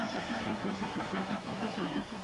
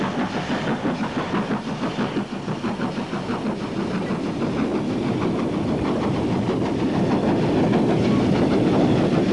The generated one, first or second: first